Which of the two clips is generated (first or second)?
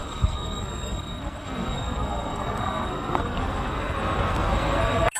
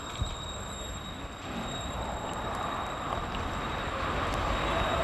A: first